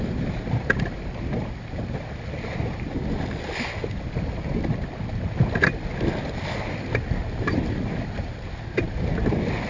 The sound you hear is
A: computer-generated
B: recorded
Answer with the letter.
B